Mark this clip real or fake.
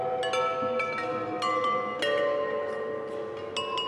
real